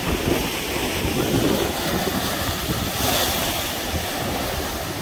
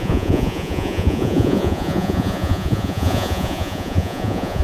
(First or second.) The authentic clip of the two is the first